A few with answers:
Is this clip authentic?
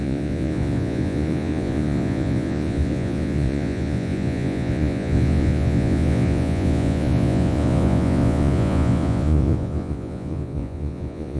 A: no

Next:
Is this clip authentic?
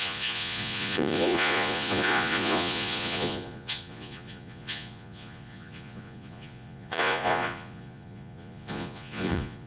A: no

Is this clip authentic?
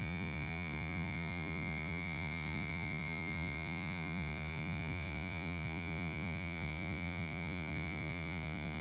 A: no